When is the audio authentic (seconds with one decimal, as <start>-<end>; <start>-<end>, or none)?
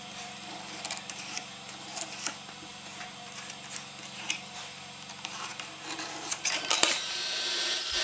none